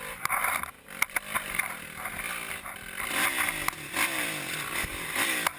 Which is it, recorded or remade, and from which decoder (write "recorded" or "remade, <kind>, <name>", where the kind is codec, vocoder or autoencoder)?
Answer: recorded